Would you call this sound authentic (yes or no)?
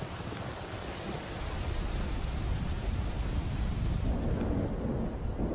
yes